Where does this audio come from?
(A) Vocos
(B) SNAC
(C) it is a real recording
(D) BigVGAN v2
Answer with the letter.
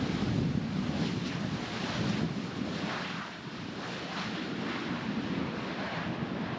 C